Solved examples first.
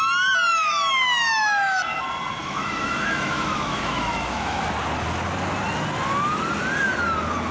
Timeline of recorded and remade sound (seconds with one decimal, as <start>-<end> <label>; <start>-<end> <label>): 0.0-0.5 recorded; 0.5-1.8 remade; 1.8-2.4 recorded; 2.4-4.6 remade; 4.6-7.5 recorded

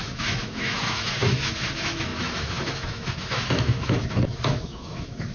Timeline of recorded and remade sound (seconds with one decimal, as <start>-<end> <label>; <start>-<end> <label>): 0.0-5.3 remade

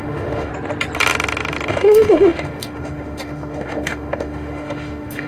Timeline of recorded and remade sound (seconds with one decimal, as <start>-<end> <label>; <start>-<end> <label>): 0.0-0.5 remade; 0.5-1.7 recorded; 1.7-5.3 remade

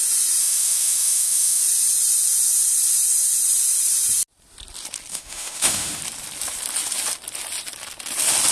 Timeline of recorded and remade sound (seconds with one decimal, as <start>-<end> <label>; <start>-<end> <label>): 0.0-0.4 recorded; 0.4-1.6 remade; 1.6-5.1 recorded; 5.1-6.0 remade; 6.0-8.5 recorded

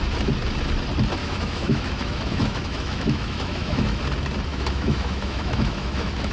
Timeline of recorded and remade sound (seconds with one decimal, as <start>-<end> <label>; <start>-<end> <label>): 0.0-1.2 recorded; 1.2-4.0 remade; 4.0-4.5 recorded; 4.5-6.3 remade

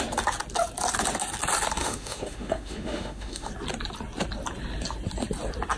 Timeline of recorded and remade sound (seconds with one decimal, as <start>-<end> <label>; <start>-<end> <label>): 0.0-1.8 recorded; 1.8-3.5 remade; 3.5-5.8 recorded